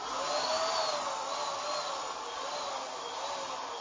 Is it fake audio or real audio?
real